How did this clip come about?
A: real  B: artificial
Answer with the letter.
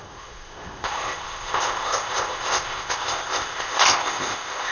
B